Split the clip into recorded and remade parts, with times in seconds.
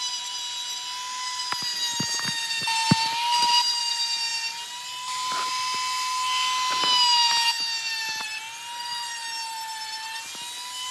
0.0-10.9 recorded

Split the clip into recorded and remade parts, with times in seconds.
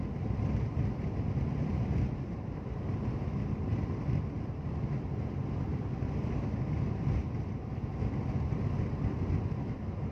0.0-10.1 recorded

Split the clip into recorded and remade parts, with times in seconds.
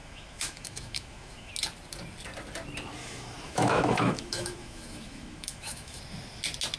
0.0-1.5 remade; 1.5-3.0 recorded; 3.0-6.0 remade; 6.0-6.8 recorded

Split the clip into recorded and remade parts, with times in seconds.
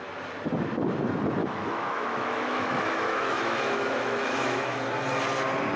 0.0-1.4 recorded; 1.4-4.8 remade; 4.8-5.8 recorded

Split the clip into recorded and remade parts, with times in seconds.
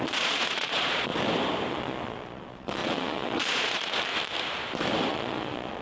0.0-1.1 remade; 1.1-1.7 recorded; 1.7-4.1 remade; 4.1-5.1 recorded; 5.1-5.8 remade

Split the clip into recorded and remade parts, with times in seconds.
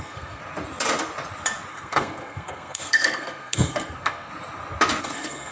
0.0-0.4 remade; 0.4-1.7 recorded; 1.7-4.3 remade; 4.3-5.0 recorded; 5.0-5.5 remade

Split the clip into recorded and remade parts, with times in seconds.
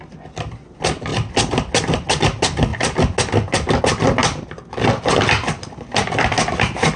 0.0-4.2 recorded; 4.2-4.9 remade; 4.9-7.0 recorded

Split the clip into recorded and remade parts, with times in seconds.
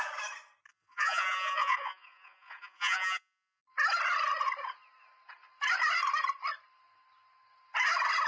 0.0-0.7 recorded; 0.7-3.6 remade; 3.6-8.3 recorded